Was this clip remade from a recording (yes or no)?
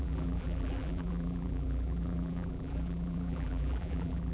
yes